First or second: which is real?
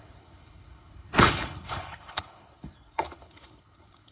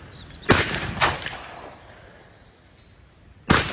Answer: second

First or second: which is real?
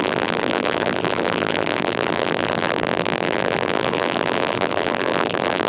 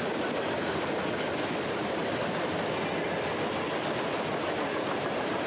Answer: second